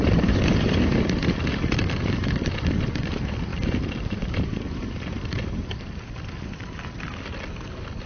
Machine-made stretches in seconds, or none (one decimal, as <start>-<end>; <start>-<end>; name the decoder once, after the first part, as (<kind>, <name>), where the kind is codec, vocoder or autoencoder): 3.5-4.6 (vocoder, BigVGAN v2)